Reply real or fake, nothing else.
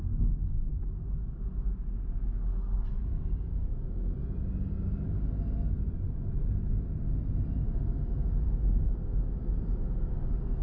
real